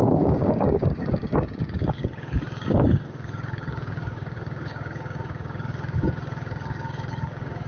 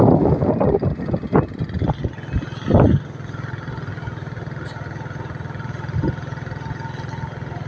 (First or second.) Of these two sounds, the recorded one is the second